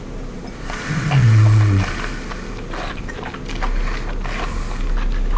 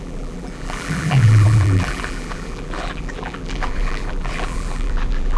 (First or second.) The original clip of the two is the first